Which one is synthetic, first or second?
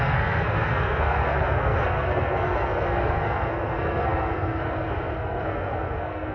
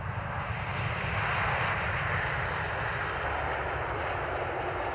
first